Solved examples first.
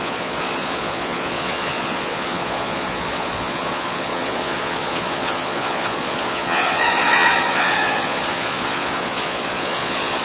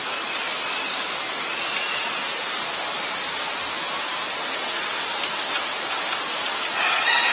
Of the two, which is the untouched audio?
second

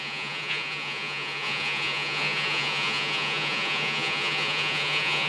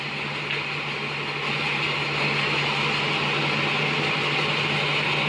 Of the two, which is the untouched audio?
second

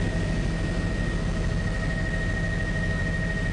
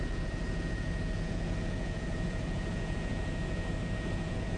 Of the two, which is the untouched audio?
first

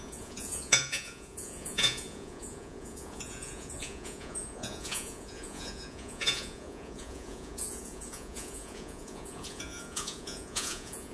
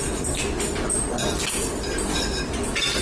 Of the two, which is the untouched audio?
second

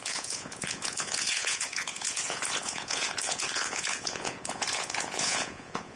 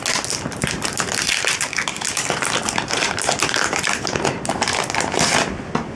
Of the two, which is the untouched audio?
second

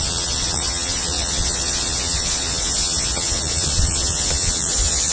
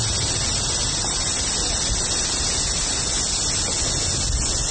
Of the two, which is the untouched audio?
second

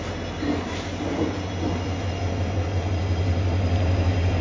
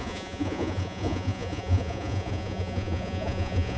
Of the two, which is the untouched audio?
first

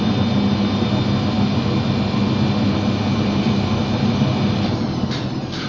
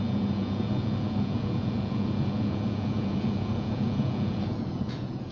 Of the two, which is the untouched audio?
first